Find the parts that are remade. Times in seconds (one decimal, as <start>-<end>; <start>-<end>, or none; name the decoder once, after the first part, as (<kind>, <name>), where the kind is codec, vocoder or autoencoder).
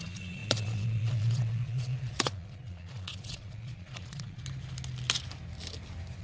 0.0-4.4 (vocoder, Vocos)